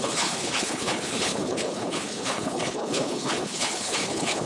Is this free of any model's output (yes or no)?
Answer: no